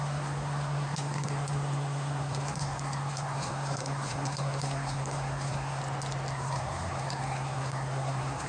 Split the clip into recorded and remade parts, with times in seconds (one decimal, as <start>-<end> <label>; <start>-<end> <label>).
0.0-5.8 remade; 5.8-6.3 recorded; 6.3-8.5 remade